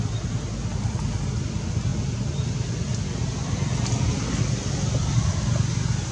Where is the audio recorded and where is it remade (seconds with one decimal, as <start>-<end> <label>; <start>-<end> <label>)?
0.0-6.1 recorded